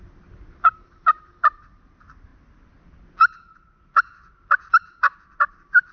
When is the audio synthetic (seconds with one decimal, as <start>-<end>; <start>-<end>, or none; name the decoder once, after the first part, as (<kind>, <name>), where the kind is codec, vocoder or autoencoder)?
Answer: none